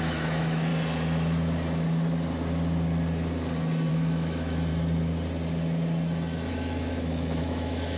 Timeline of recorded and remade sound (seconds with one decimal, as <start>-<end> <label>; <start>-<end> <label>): 0.0-0.7 remade; 0.7-3.9 recorded; 3.9-4.7 remade; 4.7-6.5 recorded; 6.5-8.0 remade